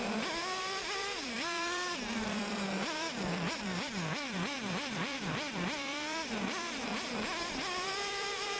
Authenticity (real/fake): fake